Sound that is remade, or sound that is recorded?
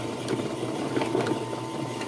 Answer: recorded